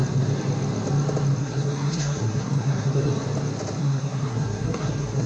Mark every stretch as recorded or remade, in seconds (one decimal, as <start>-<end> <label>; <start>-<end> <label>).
0.0-1.4 recorded; 1.4-3.1 remade; 3.1-3.8 recorded; 3.8-5.3 remade